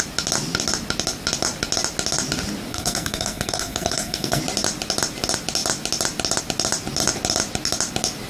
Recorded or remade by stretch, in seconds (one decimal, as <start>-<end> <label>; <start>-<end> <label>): 0.0-2.7 recorded; 2.7-4.4 remade; 4.4-8.3 recorded